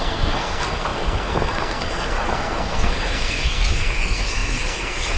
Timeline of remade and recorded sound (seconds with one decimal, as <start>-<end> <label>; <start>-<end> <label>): 0.0-5.2 remade